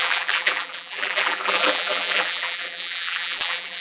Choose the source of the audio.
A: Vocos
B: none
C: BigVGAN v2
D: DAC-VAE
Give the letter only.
C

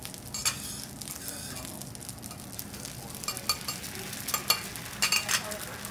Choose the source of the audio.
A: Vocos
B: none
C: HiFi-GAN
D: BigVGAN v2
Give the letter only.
B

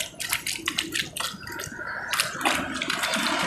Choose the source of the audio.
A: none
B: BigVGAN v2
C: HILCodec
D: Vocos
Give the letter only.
A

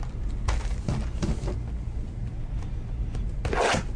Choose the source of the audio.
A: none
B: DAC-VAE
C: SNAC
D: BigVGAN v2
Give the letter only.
A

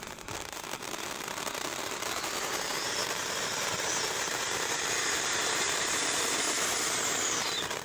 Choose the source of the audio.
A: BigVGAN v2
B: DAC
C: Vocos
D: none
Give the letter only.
A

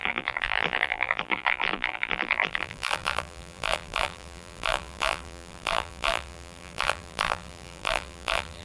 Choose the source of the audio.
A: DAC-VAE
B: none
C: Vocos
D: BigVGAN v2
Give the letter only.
D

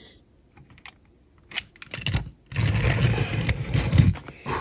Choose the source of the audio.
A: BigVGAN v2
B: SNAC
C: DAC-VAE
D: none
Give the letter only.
D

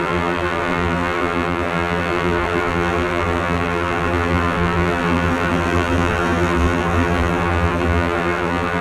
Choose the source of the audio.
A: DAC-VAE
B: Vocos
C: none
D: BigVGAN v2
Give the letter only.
D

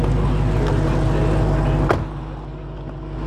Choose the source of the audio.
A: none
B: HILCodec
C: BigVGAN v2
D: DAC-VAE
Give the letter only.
A